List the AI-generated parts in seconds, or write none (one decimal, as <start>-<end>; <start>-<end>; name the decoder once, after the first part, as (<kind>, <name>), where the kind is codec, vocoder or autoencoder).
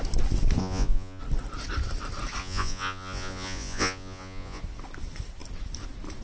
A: 0.6-1.2 (vocoder, Vocos); 2.4-4.6